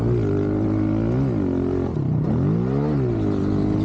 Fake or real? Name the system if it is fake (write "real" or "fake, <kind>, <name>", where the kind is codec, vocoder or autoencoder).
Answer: real